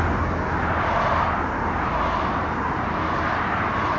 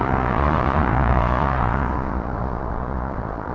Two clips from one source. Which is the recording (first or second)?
first